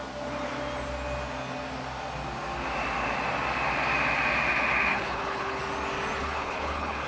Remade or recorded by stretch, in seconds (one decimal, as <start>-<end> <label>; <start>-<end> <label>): 0.0-4.9 recorded; 4.9-5.6 remade; 5.6-6.2 recorded; 6.2-7.1 remade